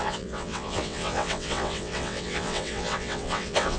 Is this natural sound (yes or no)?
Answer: no